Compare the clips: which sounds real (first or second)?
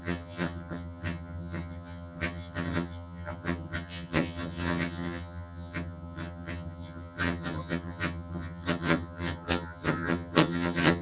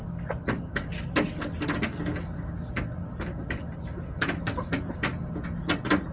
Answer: second